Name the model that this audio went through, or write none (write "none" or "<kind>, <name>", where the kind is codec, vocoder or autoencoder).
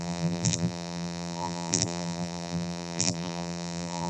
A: vocoder, BigVGAN v2